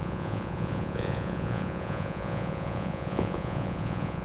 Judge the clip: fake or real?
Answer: fake